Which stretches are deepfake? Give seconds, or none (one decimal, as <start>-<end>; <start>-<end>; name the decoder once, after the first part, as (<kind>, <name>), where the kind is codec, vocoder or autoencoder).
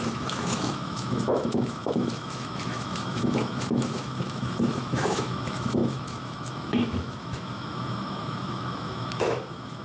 0.0-9.8 (autoencoder, DAC-VAE)